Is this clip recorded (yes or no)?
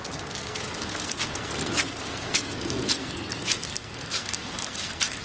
no